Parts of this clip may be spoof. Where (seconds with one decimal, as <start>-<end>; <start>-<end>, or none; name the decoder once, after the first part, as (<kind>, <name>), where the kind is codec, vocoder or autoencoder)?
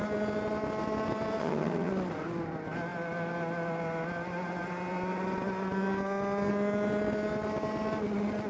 1.4-1.9 (vocoder, HiFi-GAN)